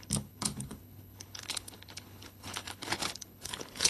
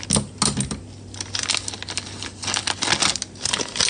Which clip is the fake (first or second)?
first